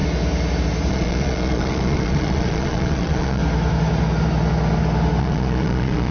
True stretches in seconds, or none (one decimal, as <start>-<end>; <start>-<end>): 0.0-0.9; 3.4-5.2